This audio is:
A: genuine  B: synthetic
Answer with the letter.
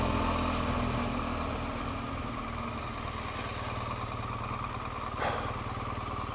A